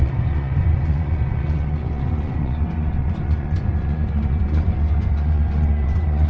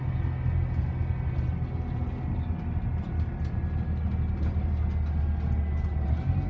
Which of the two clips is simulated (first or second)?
first